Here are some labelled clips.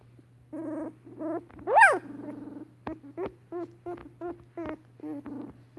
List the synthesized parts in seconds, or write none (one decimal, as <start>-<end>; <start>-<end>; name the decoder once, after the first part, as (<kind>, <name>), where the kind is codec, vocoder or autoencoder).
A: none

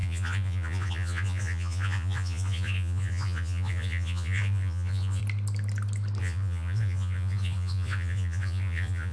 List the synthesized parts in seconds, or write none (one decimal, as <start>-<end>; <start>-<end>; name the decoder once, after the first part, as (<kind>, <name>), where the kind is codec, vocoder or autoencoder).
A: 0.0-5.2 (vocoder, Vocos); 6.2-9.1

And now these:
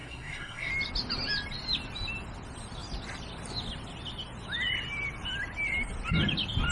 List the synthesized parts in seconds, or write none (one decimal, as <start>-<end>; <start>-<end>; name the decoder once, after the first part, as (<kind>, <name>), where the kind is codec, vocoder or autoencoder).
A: 0.0-0.7 (codec, SNAC)

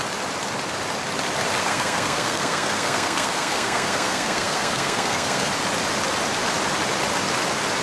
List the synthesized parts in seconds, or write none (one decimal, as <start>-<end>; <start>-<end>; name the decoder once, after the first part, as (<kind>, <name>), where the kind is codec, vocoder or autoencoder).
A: 1.6-5.5 (codec, SNAC)